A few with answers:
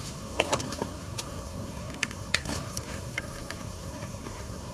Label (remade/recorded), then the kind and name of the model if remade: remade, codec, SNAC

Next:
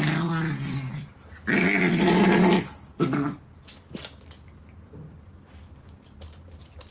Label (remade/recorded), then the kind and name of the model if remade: recorded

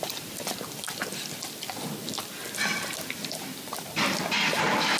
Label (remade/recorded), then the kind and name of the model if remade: recorded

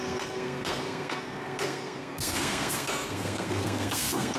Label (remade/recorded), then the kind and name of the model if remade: remade, codec, SNAC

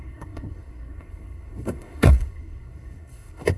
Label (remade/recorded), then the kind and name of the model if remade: remade, codec, SNAC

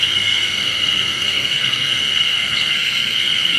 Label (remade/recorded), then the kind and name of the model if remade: remade, codec, SNAC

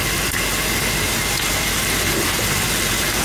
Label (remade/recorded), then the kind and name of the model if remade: recorded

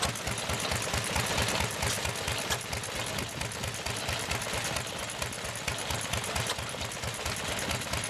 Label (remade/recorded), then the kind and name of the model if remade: recorded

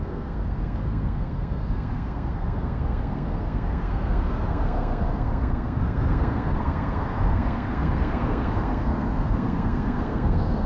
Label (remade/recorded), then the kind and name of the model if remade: remade, codec, SNAC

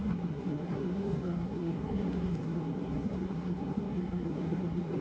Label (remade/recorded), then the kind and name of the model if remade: remade, codec, SNAC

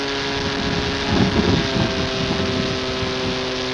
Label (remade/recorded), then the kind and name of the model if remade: recorded